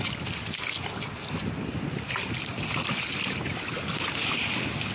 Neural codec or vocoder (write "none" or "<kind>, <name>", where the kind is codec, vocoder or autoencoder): none